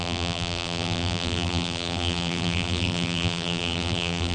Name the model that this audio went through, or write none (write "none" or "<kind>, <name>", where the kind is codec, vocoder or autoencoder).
vocoder, BigVGAN v2